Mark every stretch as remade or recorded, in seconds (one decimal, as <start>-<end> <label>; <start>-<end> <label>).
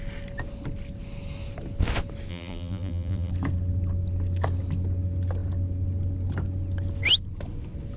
0.0-2.3 recorded; 2.3-3.3 remade; 3.3-8.0 recorded